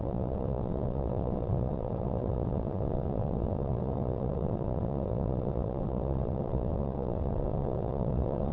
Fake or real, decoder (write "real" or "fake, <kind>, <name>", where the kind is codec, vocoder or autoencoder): fake, vocoder, WaveNeXt